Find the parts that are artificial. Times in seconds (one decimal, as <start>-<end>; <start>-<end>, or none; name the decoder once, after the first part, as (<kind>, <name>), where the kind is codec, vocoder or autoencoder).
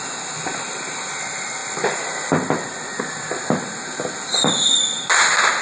none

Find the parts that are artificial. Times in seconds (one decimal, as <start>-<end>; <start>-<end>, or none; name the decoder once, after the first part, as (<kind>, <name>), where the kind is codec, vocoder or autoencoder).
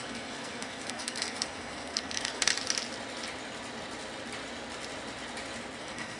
0.0-2.5 (codec, SNAC); 5.8-6.2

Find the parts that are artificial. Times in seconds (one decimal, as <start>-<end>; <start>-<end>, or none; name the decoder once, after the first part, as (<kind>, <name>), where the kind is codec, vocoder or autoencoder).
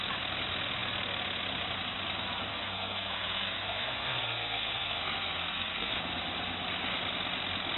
2.5-5.9 (codec, SNAC)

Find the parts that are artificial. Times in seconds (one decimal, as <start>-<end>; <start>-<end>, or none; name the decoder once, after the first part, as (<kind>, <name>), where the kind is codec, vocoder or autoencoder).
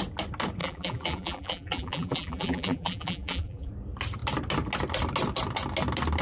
0.6-3.7 (vocoder, BigVGAN v2)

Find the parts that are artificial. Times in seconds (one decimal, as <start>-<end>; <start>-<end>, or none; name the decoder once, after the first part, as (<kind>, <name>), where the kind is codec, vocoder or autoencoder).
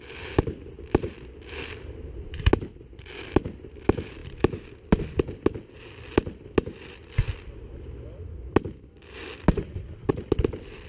none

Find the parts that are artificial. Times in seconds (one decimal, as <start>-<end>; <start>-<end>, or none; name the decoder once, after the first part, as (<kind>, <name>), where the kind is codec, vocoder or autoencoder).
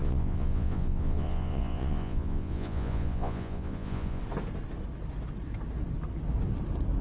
0.0-4.2 (vocoder, Vocos)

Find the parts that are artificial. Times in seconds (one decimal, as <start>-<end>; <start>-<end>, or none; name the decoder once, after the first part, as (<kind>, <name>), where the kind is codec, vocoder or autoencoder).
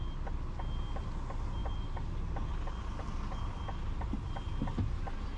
none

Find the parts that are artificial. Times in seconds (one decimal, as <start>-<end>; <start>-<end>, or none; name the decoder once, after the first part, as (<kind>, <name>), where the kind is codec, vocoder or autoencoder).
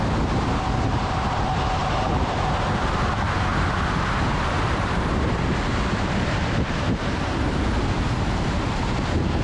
1.8-2.9 (vocoder, BigVGAN v2); 3.5-7.6